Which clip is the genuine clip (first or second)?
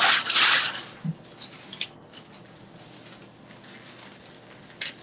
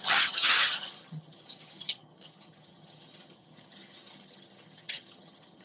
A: first